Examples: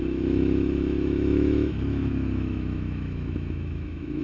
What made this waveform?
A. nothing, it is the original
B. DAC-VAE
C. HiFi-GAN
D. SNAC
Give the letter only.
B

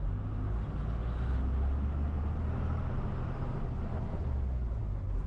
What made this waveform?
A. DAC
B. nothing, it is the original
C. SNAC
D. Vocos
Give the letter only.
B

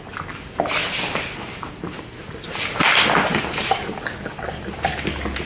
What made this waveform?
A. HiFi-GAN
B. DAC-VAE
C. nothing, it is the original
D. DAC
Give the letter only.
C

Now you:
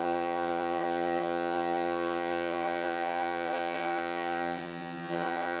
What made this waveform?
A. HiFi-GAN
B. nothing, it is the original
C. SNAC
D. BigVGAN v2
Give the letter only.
A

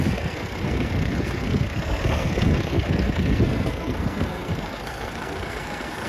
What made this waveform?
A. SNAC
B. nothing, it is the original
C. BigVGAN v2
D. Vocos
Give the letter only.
A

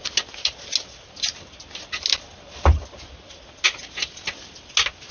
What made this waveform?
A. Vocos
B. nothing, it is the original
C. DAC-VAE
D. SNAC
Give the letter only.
B